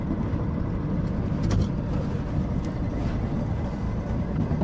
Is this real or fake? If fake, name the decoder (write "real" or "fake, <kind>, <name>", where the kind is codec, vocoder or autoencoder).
real